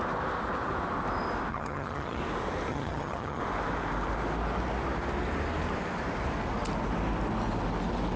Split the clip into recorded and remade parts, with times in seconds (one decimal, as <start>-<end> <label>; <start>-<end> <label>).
0.0-1.5 recorded; 1.5-2.2 remade; 2.2-2.7 recorded; 2.7-3.4 remade; 3.4-8.2 recorded